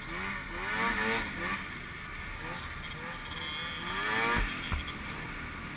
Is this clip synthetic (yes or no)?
no